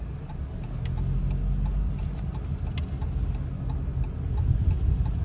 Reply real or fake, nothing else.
real